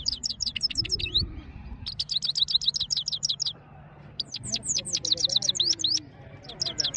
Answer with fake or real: real